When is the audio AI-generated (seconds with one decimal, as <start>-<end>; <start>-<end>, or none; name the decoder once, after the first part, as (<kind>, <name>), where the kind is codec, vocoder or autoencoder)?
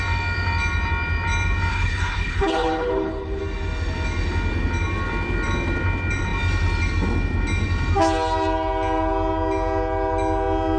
1.7-3.4 (codec, HILCodec)